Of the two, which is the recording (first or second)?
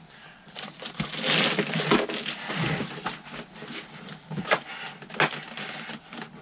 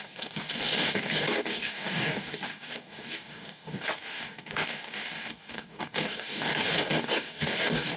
first